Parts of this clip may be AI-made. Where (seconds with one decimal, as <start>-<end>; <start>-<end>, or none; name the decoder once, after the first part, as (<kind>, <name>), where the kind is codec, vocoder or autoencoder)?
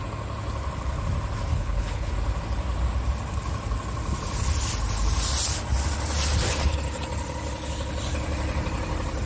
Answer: 1.5-2.1 (codec, HILCodec)